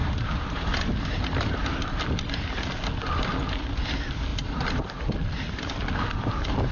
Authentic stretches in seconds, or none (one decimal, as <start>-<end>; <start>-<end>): 2.0-4.3; 5.0-6.7

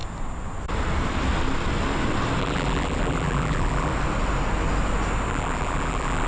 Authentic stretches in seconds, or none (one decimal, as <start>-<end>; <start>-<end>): 0.0-2.4; 3.9-5.3

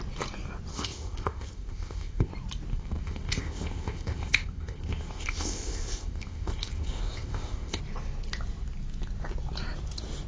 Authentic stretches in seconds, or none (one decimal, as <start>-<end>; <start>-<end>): 0.0-0.7; 2.3-2.7; 7.8-10.3

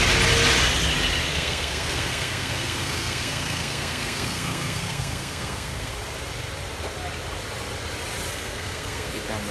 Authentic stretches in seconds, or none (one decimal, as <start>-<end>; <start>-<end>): 0.0-1.3; 5.9-8.3; 9.1-9.5

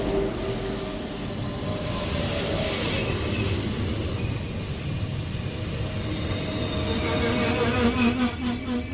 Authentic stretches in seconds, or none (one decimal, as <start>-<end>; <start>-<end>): 0.0-8.9